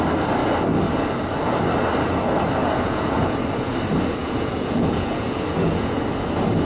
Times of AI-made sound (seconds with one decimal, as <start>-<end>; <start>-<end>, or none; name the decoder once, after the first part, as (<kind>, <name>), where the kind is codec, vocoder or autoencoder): 2.6-3.4 (vocoder, Vocos); 4.2-6.1